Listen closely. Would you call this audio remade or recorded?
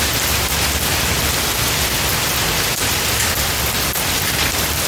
recorded